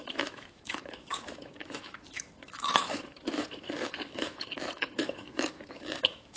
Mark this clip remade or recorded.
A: remade